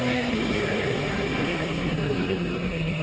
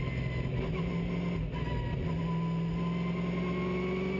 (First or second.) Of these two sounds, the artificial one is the first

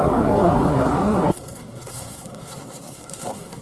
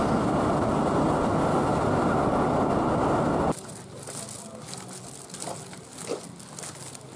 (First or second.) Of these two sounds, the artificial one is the first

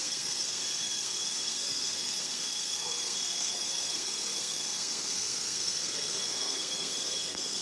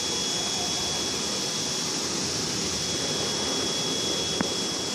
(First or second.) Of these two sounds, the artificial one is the first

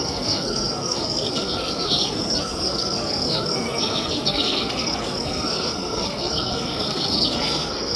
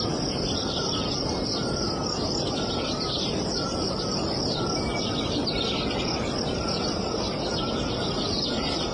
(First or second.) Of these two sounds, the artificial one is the first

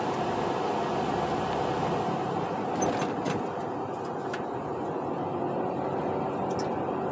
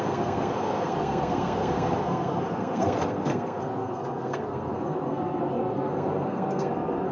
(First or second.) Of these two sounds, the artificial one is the second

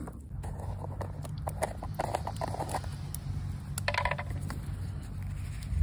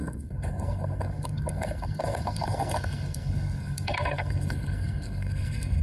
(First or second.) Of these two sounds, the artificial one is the second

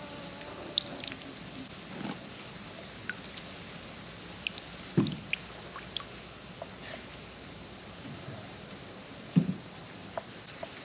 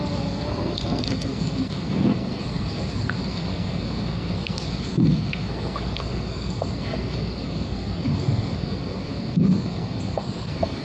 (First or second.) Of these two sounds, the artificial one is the second